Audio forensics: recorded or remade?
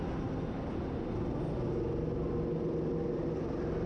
recorded